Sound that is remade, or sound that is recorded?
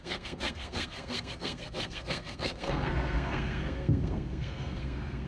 remade